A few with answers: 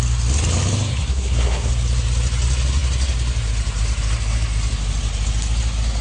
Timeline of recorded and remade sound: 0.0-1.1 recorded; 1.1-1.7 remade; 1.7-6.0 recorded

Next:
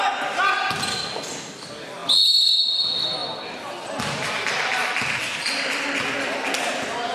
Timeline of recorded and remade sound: 0.0-7.1 recorded

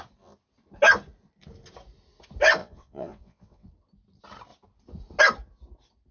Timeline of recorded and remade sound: 0.0-2.6 recorded; 2.6-3.7 remade; 3.7-6.1 recorded

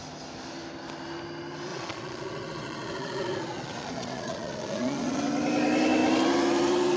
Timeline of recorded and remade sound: 0.0-1.7 recorded; 1.7-5.2 remade; 5.2-7.0 recorded